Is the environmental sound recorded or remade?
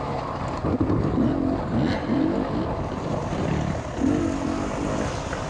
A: recorded